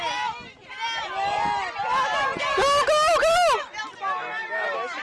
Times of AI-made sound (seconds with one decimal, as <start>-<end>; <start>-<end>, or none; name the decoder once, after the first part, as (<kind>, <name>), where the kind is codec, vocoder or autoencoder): none